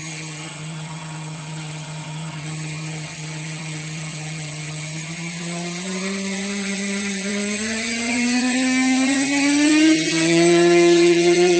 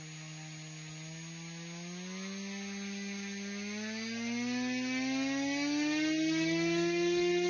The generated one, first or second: first